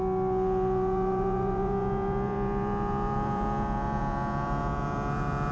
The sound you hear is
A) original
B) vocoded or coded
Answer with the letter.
B